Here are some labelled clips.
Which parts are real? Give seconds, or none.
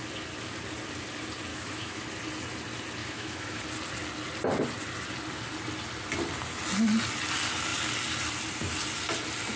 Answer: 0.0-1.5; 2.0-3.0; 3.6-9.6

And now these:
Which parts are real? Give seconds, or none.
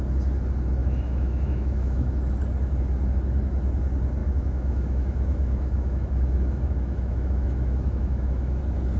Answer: 0.0-0.8; 2.2-4.2; 8.6-9.0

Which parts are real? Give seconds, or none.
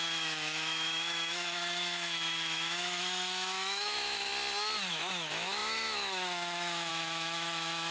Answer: 4.3-4.9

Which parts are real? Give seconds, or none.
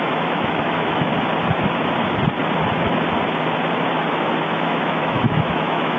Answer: 1.1-4.7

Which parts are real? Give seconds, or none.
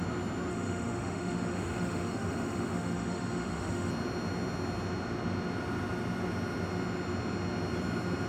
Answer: 0.0-0.5; 3.9-8.3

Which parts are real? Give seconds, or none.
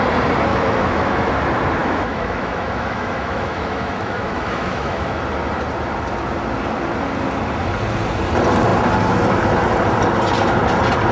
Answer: 0.0-0.5; 1.3-1.8; 5.2-11.1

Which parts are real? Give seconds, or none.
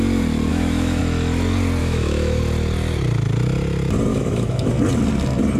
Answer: 0.0-0.5; 1.0-1.8; 2.4-4.1; 4.7-5.6